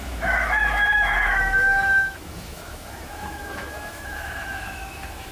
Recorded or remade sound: remade